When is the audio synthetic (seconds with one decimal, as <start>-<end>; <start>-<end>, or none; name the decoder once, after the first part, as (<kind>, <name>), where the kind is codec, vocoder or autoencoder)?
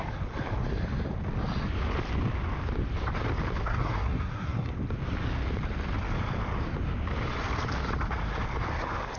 3.7-4.7 (codec, SNAC)